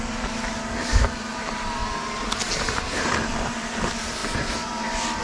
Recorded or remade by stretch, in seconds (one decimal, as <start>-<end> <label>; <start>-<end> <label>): 0.0-1.8 remade; 1.8-3.3 recorded; 3.3-4.2 remade; 4.2-5.2 recorded

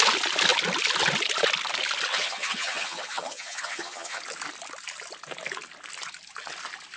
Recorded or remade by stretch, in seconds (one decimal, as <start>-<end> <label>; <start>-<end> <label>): 0.0-2.1 recorded; 2.1-4.2 remade; 4.2-7.0 recorded

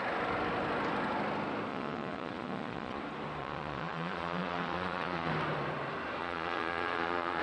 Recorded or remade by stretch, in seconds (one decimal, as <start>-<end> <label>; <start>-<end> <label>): 0.0-1.7 recorded; 1.7-3.0 remade; 3.0-3.4 recorded; 3.4-5.3 remade; 5.3-6.2 recorded; 6.2-7.4 remade

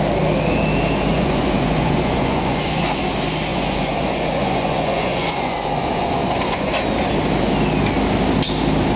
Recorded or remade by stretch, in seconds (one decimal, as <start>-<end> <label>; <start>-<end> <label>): 0.0-1.1 recorded; 1.1-3.0 remade; 3.0-3.5 recorded; 3.5-6.7 remade; 6.7-9.0 recorded